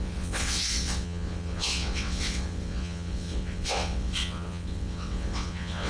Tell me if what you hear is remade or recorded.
remade